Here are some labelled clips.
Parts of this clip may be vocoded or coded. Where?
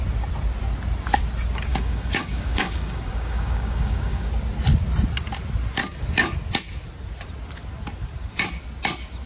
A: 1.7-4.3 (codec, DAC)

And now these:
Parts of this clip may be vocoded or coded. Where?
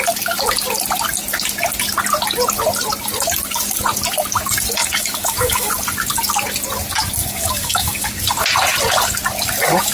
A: 4.8-5.7 (codec, DAC); 7.2-8.1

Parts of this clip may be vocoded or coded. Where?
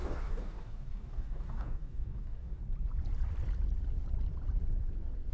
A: 0.0-2.6 (codec, DAC)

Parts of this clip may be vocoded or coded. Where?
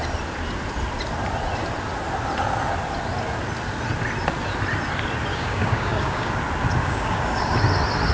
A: 5.3-6.3 (codec, DAC); 6.8-7.6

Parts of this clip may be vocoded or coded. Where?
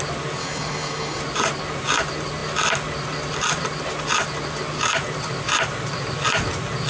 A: 0.4-1.2 (codec, DAC)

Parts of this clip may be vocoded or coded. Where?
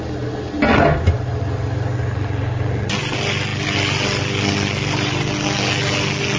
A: none